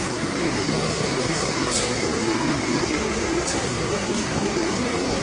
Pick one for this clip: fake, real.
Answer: fake